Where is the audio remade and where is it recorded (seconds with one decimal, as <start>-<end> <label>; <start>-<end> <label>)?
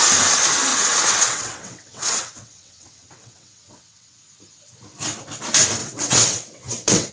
0.0-0.7 recorded; 0.7-4.2 remade; 4.2-5.8 recorded; 5.8-7.1 remade